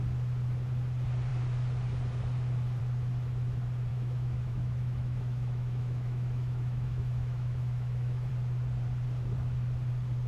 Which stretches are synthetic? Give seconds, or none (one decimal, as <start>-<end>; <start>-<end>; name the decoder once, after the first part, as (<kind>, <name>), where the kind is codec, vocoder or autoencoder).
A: 3.9-8.3 (autoencoder, DAC-VAE)